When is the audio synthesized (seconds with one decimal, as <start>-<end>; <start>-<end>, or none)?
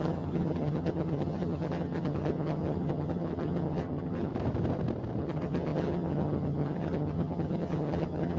0.0-4.3; 5.2-8.4